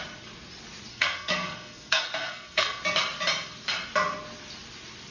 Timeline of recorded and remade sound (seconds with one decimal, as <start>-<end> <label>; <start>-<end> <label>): 0.0-0.9 recorded; 0.9-2.8 remade; 2.8-5.1 recorded